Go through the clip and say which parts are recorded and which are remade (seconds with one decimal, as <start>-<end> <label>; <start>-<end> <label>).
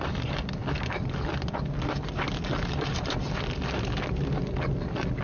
0.0-5.2 recorded